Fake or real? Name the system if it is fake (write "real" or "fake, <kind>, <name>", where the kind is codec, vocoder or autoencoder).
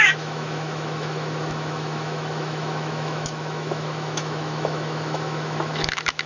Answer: fake, autoencoder, DAC-VAE